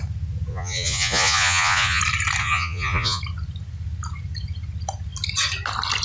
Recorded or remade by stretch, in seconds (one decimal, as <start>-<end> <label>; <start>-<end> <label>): 0.0-0.5 recorded; 0.5-2.0 remade; 2.0-2.4 recorded; 2.4-3.2 remade; 3.2-6.0 recorded